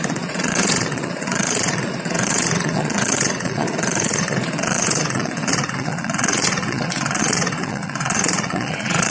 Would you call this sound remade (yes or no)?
yes